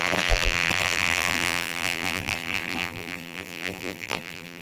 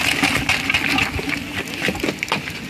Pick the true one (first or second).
second